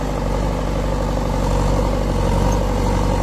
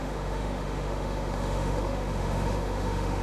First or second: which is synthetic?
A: second